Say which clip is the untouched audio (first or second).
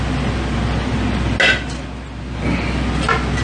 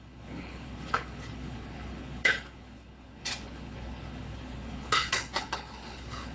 first